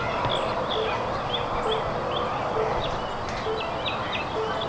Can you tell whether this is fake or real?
real